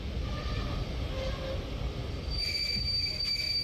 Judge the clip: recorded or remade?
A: recorded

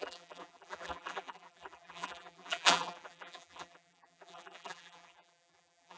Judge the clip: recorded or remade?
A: remade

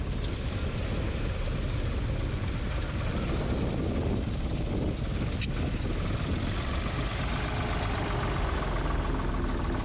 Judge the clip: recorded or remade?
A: recorded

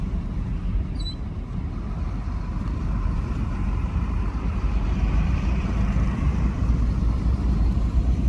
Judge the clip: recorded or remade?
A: remade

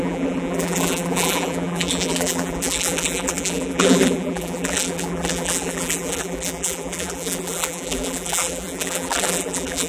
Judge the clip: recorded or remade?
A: remade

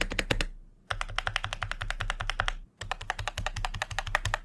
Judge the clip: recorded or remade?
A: recorded